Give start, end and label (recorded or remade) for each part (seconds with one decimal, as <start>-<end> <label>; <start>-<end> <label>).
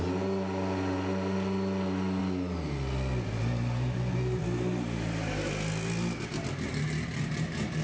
0.0-7.8 recorded